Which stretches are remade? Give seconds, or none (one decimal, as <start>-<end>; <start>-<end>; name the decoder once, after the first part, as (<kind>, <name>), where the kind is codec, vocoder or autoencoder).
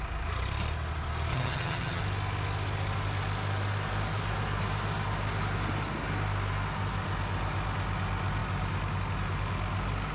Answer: 1.3-2.0 (vocoder, HiFi-GAN)